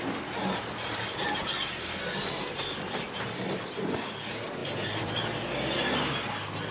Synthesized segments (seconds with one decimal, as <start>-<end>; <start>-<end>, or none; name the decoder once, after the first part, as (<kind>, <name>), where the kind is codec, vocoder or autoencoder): 4.6-5.7 (vocoder, BigVGAN v2)